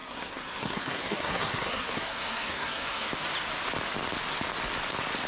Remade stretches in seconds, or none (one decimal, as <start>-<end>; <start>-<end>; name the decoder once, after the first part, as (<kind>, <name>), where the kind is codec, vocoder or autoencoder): 0.0-3.1 (codec, SNAC)